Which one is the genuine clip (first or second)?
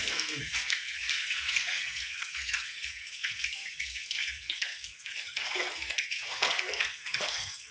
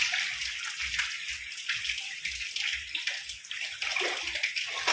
second